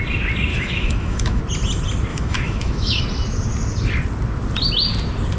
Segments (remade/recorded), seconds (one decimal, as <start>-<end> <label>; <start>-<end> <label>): 0.0-0.5 recorded; 0.5-1.4 remade; 1.4-2.1 recorded; 2.1-3.0 remade; 3.0-5.4 recorded